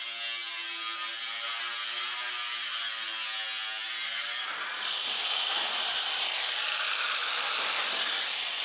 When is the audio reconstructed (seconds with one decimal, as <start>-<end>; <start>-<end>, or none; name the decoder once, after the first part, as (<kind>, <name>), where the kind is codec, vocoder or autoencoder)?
none